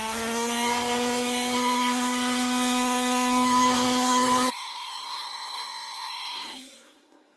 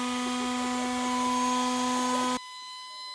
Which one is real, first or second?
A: second